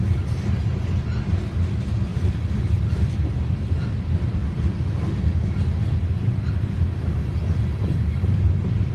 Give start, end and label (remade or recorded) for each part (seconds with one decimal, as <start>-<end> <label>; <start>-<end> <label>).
0.0-8.9 recorded